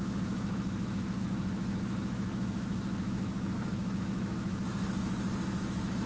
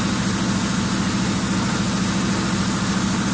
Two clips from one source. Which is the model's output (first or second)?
first